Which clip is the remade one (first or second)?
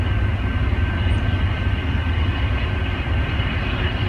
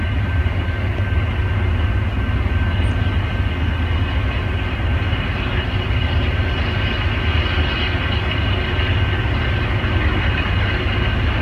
first